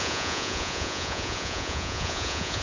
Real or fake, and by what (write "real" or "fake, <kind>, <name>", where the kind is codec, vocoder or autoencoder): fake, vocoder, Vocos